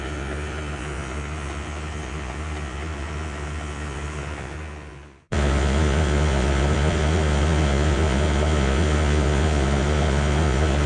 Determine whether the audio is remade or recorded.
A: remade